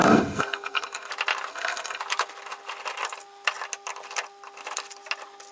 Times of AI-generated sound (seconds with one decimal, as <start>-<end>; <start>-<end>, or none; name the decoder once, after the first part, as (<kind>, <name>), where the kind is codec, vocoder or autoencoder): 0.0-1.1 (codec, SNAC); 1.5-2.0